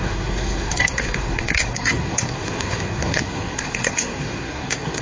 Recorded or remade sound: remade